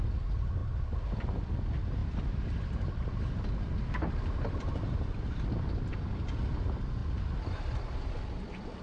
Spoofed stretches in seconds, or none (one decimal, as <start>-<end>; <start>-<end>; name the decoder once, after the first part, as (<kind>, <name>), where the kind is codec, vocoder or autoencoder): 2.0-5.9 (vocoder, BigVGAN v2)